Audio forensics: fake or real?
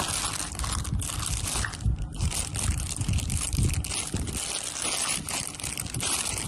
real